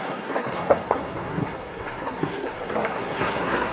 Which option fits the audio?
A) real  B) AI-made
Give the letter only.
B